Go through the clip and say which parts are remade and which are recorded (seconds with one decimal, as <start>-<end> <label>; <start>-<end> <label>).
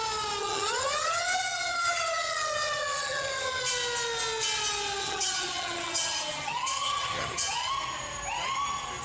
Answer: 0.0-0.4 recorded; 0.4-3.6 remade; 3.6-5.0 recorded; 5.0-7.7 remade; 7.7-9.0 recorded